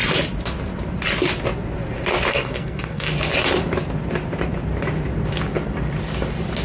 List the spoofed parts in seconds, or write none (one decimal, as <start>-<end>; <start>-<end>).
2.3-3.1